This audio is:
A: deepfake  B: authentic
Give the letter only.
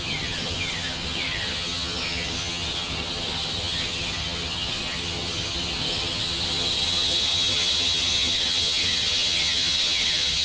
A